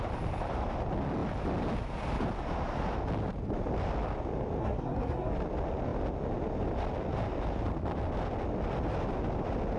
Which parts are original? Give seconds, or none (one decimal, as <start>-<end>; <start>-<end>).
0.0-4.6; 5.3-9.8